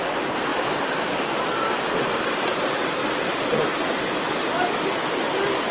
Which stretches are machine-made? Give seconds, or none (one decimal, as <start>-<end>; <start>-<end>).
3.0-3.8